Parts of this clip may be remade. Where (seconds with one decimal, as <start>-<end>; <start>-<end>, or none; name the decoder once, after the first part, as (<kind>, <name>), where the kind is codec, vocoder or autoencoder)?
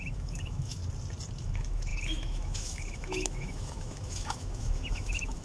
0.0-0.8 (autoencoder, DAC-VAE); 1.4-5.4